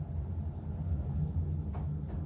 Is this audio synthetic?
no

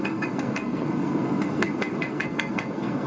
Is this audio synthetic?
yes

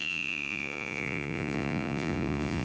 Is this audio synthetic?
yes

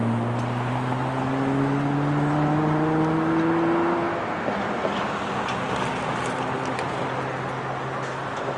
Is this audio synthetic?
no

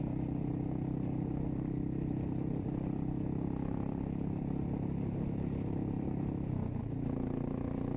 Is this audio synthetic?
no